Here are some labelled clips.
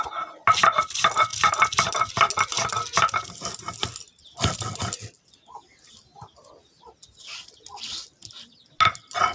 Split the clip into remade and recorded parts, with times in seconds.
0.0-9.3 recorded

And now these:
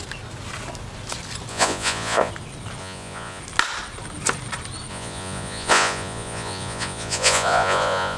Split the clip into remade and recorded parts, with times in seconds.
0.0-1.5 recorded; 1.5-2.3 remade; 2.3-2.8 recorded; 2.8-3.4 remade; 3.4-4.9 recorded; 4.9-8.2 remade

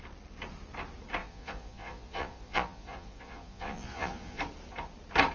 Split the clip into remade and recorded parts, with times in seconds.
0.0-1.2 recorded; 1.2-4.4 remade; 4.4-5.3 recorded

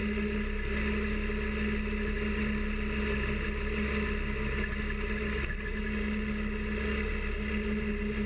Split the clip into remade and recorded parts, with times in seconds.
0.0-8.3 recorded

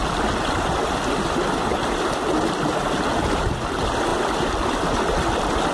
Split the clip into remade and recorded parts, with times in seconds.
0.0-5.7 recorded